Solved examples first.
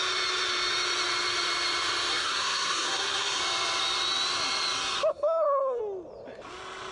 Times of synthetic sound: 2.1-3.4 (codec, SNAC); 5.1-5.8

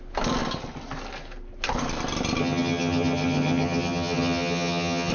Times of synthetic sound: 2.4-5.1 (vocoder, HiFi-GAN)

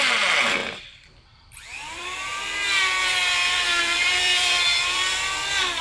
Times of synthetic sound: 0.0-5.8 (vocoder, BigVGAN v2)

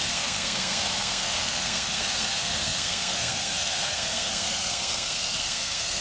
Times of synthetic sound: 0.0-6.0 (codec, SNAC)

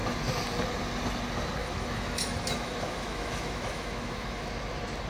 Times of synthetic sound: 1.6-4.5 (autoencoder, DAC-VAE)